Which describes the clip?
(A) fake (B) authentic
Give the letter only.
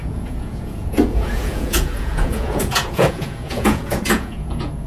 A